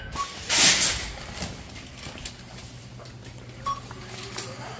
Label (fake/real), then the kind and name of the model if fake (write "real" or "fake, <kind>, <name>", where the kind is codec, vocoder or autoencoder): real